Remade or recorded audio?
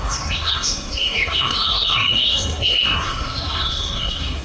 remade